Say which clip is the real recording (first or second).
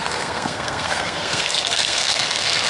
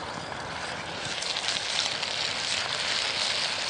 second